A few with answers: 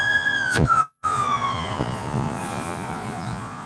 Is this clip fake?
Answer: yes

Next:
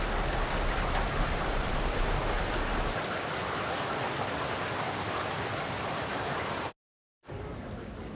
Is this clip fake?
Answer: no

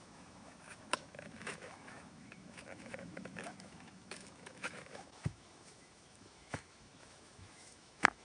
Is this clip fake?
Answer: yes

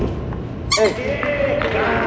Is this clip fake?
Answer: no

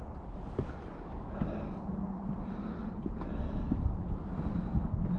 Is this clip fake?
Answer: no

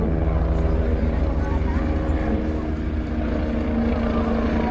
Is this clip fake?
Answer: no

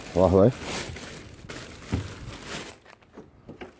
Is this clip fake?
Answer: no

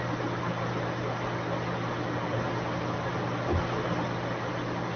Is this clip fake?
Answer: no